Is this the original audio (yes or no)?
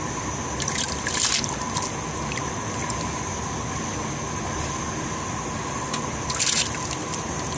yes